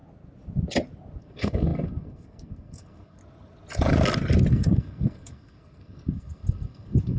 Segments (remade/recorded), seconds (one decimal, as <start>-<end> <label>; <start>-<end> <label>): 0.0-1.2 recorded; 1.2-3.2 remade; 3.2-4.5 recorded; 4.5-7.2 remade